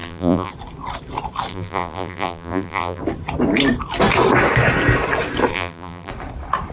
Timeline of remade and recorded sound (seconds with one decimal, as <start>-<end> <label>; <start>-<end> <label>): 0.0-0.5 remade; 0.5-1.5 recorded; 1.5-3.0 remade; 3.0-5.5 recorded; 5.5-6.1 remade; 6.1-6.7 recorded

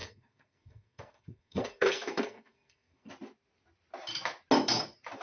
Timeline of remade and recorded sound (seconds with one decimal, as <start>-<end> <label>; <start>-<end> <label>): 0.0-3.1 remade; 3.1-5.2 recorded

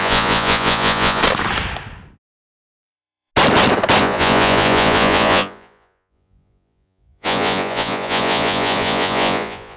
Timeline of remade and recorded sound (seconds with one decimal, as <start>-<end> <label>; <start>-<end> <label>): 0.0-1.2 remade; 1.2-2.4 recorded; 2.4-3.3 remade; 3.3-4.0 recorded; 4.0-9.8 remade

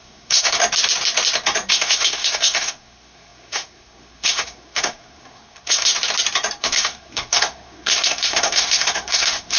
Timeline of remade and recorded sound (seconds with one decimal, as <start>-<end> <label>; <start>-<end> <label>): 0.0-0.6 remade; 0.6-1.7 recorded; 1.7-5.9 remade; 5.9-6.6 recorded; 6.6-9.6 remade

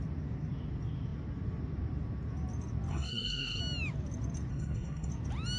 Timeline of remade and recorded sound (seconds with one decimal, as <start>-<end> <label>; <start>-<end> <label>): 0.0-2.9 recorded; 2.9-3.6 remade; 3.6-4.5 recorded; 4.5-5.1 remade; 5.1-5.6 recorded

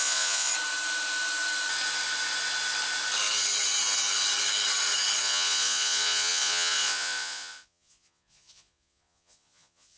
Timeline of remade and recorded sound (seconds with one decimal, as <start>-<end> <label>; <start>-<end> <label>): 0.0-0.5 remade; 0.5-5.2 recorded; 5.2-10.0 remade